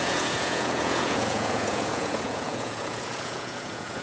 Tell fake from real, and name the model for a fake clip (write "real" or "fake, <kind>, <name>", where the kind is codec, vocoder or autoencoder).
fake, vocoder, Vocos